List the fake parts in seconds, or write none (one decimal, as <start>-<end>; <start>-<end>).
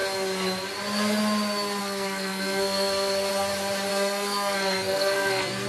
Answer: 1.8-3.3; 3.9-5.7